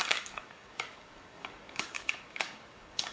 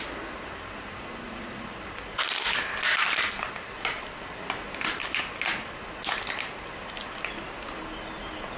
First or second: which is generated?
first